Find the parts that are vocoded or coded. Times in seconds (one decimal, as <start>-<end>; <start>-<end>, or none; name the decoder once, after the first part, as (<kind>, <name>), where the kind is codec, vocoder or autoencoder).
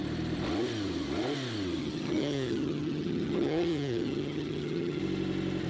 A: 1.8-5.0 (vocoder, HiFi-GAN)